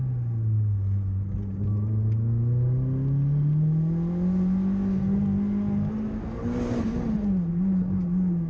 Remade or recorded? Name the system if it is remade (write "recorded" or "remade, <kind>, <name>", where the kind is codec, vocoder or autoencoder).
recorded